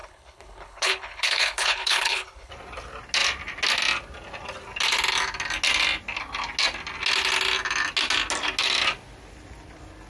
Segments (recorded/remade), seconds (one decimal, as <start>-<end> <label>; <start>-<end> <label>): 0.0-2.5 remade; 2.5-10.1 recorded